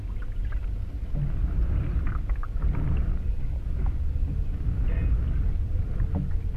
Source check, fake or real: real